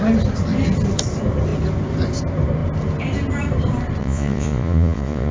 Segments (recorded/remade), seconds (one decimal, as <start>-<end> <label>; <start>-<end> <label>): 0.0-4.0 recorded; 4.0-5.3 remade